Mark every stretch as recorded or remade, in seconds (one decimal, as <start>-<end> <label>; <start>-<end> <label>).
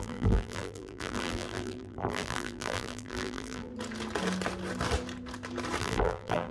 0.0-3.7 remade; 3.7-5.8 recorded; 5.8-6.5 remade